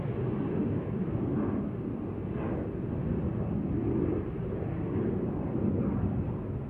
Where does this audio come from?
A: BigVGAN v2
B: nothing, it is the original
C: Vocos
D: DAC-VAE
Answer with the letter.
B